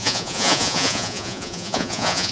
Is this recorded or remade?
remade